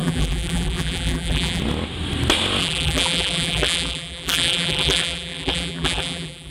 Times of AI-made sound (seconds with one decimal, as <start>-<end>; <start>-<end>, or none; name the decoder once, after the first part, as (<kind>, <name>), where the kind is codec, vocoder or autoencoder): 0.0-1.6 (vocoder, BigVGAN v2); 2.6-6.5